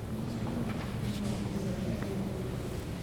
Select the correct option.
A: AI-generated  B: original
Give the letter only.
B